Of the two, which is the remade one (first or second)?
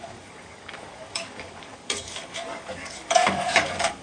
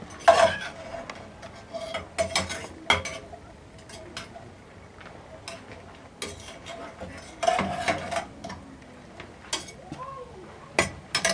first